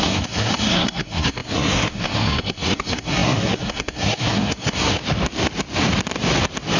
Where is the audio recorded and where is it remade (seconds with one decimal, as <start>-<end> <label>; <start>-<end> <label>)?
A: 0.0-5.0 remade; 5.0-6.8 recorded